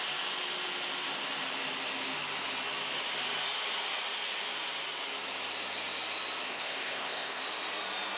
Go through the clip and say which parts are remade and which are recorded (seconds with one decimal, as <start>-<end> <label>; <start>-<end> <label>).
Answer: 0.0-6.5 recorded; 6.5-7.4 remade; 7.4-8.2 recorded